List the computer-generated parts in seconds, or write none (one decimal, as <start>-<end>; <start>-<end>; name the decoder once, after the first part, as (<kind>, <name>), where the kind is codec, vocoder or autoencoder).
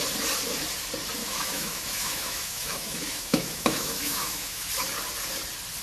1.2-4.7 (autoencoder, DAC-VAE)